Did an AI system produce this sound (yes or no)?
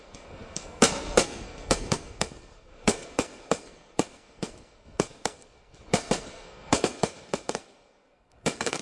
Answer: yes